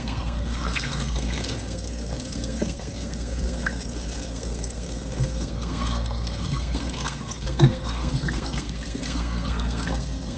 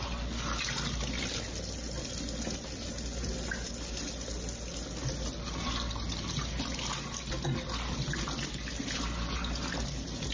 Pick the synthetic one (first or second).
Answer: first